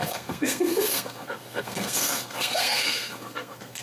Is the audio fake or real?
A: fake